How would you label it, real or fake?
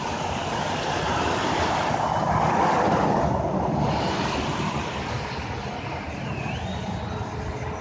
real